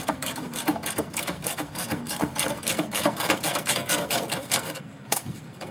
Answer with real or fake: fake